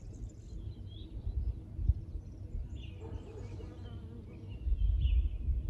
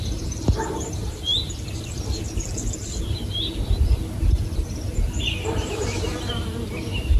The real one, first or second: first